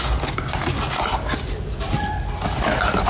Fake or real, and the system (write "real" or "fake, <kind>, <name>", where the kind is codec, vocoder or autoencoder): real